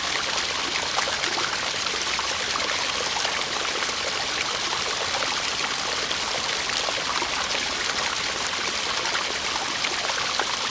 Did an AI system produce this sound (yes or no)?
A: no